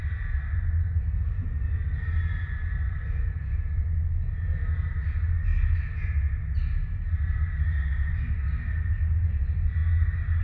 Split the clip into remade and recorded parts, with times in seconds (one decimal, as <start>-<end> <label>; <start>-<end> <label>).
0.0-10.4 recorded